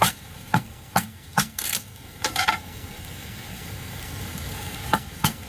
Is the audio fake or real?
fake